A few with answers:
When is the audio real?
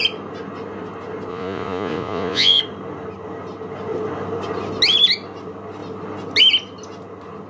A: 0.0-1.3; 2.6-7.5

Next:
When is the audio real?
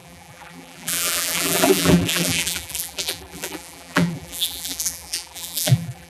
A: none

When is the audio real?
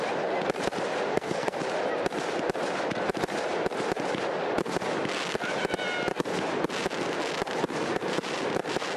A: 0.0-1.1; 1.6-9.0